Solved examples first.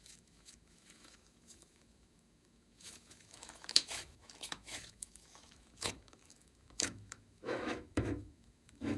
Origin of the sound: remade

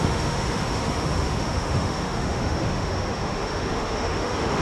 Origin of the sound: remade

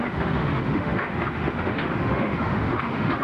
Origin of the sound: remade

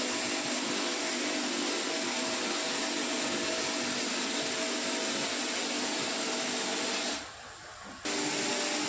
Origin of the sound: recorded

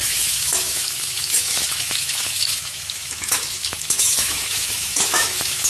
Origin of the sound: remade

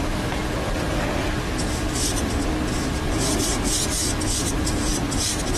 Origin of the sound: recorded